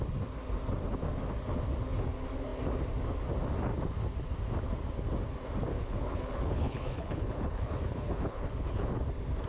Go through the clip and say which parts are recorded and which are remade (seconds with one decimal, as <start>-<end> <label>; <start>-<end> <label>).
0.0-5.7 recorded; 5.7-9.0 remade; 9.0-9.5 recorded